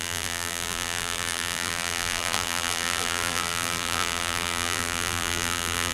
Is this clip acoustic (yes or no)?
no